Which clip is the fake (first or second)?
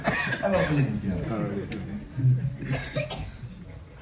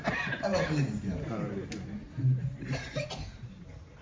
second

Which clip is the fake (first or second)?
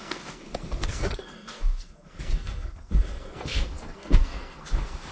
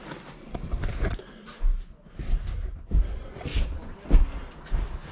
first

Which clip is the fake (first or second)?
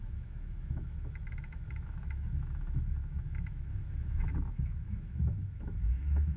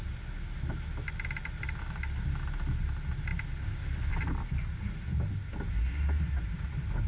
first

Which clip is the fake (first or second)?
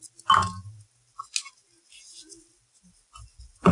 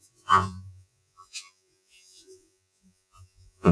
second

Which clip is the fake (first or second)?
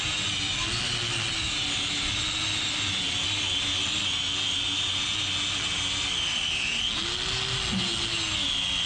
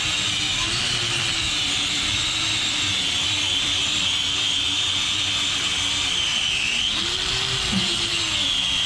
second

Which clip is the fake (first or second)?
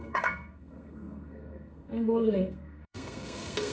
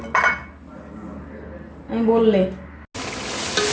first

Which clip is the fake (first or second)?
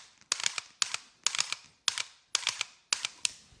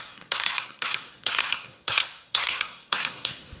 second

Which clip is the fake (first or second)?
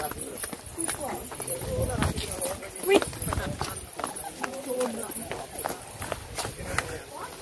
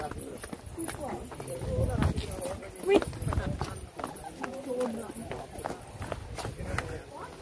first